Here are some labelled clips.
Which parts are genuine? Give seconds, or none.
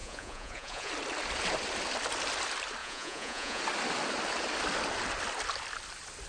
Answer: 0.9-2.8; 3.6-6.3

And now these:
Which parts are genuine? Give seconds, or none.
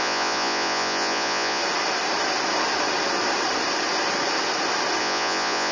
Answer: 1.6-5.0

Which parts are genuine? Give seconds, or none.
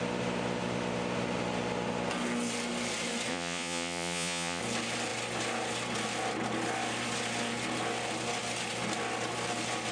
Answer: 0.0-3.3; 4.6-9.9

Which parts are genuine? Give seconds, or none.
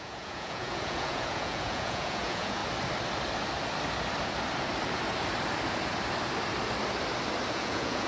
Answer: 2.6-7.5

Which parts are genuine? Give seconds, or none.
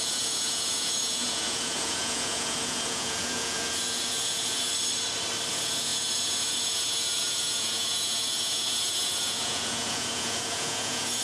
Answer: 4.7-5.5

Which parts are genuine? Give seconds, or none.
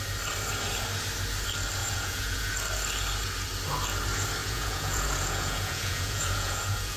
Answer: 0.0-1.8; 2.5-4.4